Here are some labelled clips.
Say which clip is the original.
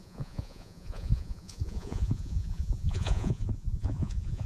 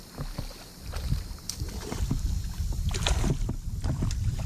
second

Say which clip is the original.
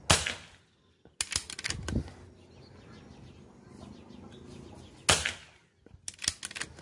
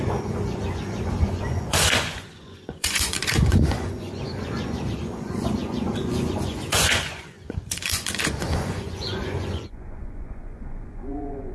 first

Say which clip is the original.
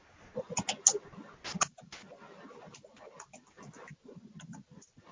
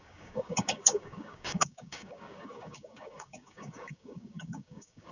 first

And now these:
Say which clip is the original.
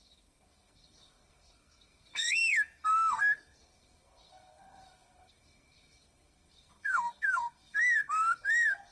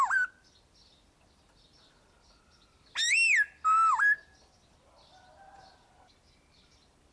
second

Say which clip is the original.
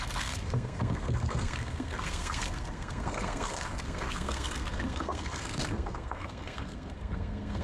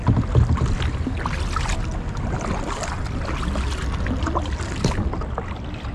second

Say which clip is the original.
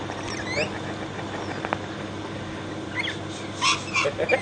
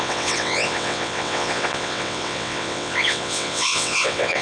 first